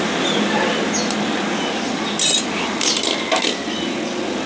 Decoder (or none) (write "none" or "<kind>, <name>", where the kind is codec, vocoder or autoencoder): none